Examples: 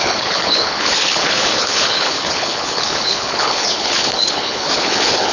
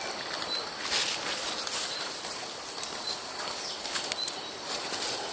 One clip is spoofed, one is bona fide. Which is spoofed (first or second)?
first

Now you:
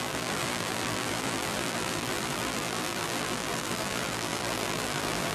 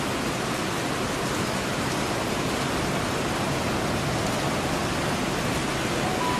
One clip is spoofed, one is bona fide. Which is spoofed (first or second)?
first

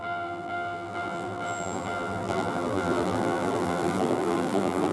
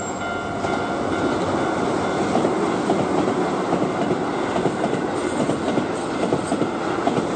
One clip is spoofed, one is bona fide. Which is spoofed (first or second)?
first